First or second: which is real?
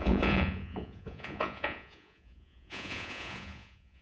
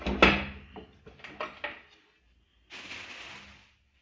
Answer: second